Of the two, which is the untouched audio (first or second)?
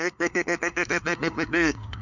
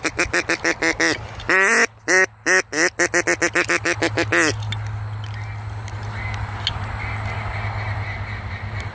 second